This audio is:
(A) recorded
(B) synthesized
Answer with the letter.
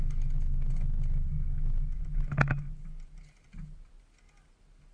A